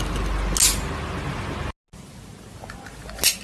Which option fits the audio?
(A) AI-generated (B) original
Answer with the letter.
B